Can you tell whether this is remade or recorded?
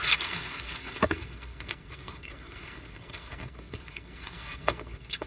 remade